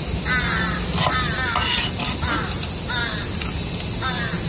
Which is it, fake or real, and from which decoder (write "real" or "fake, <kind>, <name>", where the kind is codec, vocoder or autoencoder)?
real